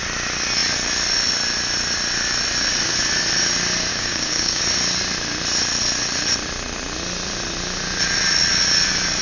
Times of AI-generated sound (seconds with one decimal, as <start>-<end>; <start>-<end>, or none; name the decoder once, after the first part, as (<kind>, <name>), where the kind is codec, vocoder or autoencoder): 3.9-4.6 (codec, DAC)

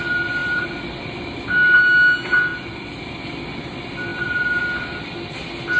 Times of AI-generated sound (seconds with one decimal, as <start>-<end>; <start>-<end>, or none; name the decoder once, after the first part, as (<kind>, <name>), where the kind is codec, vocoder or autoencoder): 0.4-1.2 (vocoder, BigVGAN v2); 2.5-3.2; 4.1-4.6

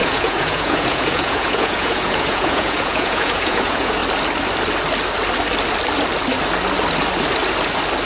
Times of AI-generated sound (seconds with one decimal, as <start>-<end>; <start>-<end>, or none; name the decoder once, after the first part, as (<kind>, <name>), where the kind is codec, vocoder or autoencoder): 0.0-4.0 (vocoder, Vocos)

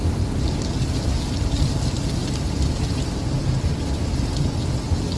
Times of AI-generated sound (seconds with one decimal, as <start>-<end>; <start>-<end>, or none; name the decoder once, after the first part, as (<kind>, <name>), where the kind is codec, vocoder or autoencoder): none

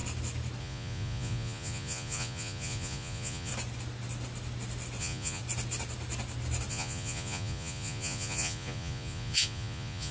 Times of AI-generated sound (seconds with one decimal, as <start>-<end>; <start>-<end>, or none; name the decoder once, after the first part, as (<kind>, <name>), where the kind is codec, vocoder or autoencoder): 0.6-3.5 (vocoder, Vocos); 5.0-5.4; 6.7-10.1

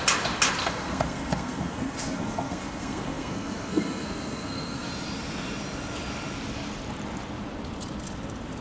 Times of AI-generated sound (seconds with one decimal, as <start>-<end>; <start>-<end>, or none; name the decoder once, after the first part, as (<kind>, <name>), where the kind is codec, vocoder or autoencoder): 0.6-4.9 (codec, SNAC)